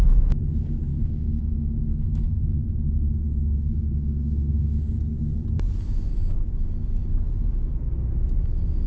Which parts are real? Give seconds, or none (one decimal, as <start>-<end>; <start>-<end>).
0.0-0.9; 4.8-8.9